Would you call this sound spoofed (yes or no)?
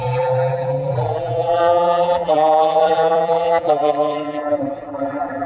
yes